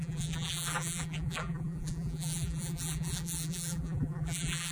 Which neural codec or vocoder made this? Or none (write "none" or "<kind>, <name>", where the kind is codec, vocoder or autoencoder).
vocoder, BigVGAN v2